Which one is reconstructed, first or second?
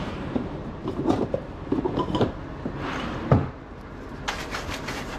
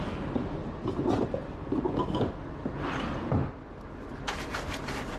first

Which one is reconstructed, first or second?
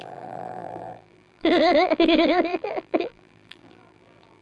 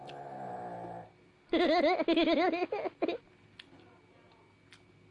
first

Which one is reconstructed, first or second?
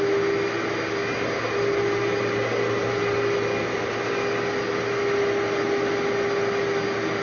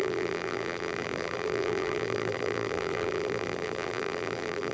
second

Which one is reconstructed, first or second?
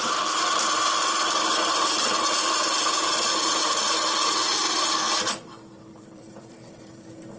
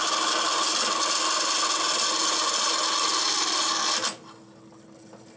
first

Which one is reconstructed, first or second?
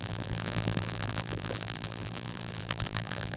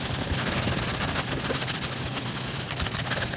first